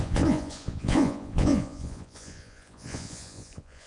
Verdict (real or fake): fake